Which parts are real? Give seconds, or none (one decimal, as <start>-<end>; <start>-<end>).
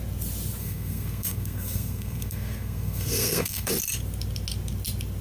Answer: 0.0-0.6; 3.7-5.2